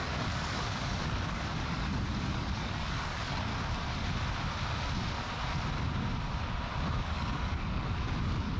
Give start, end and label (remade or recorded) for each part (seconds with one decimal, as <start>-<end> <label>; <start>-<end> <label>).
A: 0.0-3.5 remade; 3.5-6.9 recorded; 6.9-8.6 remade